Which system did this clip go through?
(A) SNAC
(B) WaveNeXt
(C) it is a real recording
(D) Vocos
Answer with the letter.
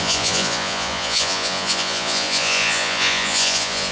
D